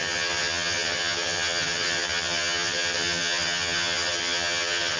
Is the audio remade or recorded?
remade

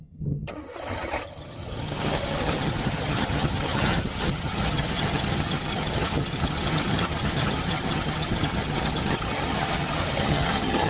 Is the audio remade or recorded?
remade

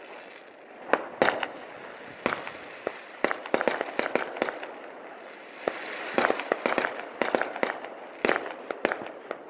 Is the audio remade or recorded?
recorded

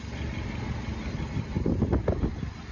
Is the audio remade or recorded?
recorded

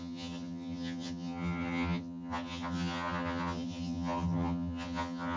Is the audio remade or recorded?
remade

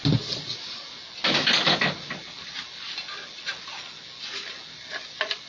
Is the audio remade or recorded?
recorded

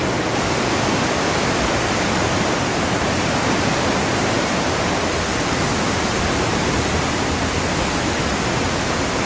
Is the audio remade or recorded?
recorded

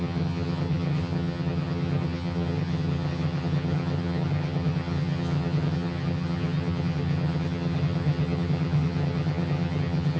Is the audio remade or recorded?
remade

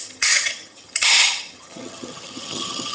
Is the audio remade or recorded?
remade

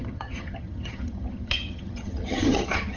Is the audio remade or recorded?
remade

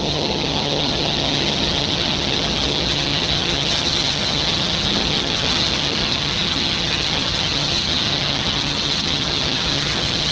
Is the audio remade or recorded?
remade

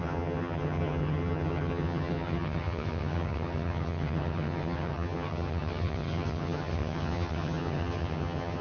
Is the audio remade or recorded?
remade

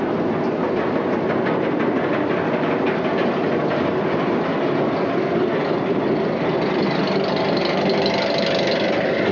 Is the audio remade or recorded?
recorded